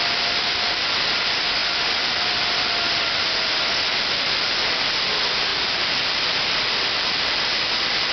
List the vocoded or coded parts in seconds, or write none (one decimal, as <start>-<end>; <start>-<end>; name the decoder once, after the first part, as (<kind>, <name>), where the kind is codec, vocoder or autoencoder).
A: none